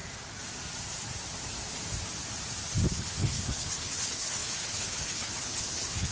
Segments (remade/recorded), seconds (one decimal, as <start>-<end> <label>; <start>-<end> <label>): 0.0-2.9 recorded; 2.9-6.1 remade